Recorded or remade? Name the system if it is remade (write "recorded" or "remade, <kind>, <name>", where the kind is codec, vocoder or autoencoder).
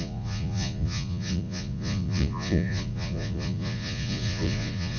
remade, vocoder, Vocos